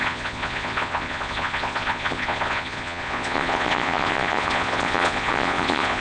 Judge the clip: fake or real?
fake